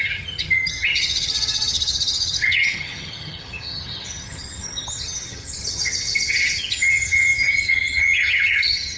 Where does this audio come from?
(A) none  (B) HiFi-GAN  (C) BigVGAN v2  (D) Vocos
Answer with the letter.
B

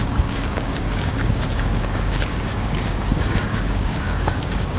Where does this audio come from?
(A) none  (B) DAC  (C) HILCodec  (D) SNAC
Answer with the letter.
B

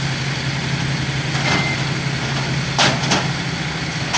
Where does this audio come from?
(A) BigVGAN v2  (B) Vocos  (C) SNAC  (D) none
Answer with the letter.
D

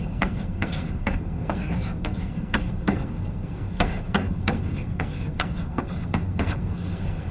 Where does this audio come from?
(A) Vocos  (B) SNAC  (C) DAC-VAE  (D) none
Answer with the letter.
B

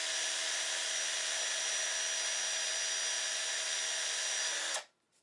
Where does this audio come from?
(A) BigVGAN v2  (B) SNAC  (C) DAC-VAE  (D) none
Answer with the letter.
D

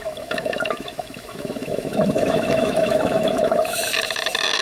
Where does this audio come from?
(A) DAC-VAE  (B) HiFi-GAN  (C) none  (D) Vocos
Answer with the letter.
A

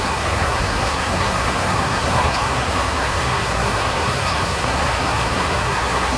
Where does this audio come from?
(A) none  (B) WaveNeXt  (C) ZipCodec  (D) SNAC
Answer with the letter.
D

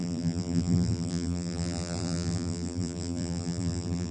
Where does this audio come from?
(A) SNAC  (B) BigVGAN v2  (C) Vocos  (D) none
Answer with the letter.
B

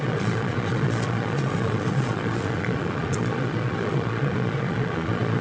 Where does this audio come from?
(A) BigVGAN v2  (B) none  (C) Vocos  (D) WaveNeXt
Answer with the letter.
C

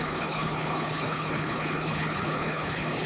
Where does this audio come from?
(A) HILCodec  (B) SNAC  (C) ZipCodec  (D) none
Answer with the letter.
A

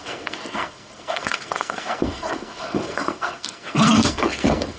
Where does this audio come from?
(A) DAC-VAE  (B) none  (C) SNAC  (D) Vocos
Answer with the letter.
C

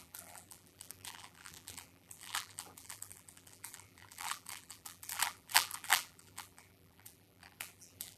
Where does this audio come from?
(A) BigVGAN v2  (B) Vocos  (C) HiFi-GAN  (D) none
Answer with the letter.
A